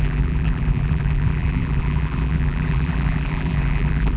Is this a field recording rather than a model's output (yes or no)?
no